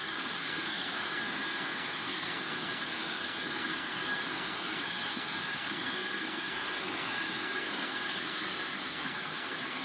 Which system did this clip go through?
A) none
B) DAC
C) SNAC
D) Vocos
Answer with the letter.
C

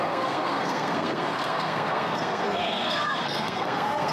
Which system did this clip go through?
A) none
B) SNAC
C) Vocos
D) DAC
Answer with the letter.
B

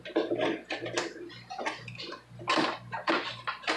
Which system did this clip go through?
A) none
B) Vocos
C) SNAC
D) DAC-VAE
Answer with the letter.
A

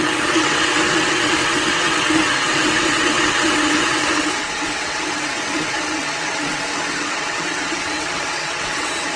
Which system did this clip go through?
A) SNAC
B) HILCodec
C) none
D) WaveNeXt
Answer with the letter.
D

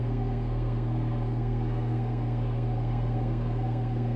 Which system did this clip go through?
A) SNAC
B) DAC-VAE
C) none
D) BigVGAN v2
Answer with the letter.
A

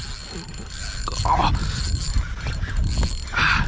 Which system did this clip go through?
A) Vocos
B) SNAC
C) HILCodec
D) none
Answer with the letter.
D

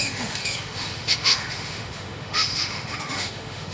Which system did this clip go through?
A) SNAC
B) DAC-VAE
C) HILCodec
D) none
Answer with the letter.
B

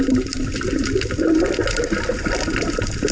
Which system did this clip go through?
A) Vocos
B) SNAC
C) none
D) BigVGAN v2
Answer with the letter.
C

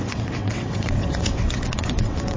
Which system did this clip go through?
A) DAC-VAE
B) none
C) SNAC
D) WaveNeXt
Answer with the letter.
D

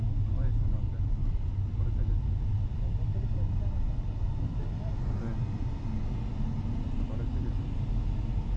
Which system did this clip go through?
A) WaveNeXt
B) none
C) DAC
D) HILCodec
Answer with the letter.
B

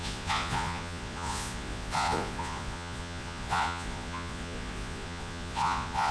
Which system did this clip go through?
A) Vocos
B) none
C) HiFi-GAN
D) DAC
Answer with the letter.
A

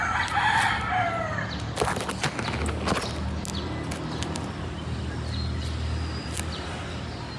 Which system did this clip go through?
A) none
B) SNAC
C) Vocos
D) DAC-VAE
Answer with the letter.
A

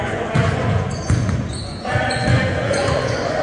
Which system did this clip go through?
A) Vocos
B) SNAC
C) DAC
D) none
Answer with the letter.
A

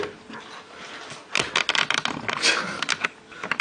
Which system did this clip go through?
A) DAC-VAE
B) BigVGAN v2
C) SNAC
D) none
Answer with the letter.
D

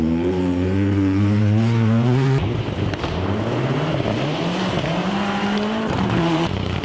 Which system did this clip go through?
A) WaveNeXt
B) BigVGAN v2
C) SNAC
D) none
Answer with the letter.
B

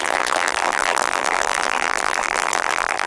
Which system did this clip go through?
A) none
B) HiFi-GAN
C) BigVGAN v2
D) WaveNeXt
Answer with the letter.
C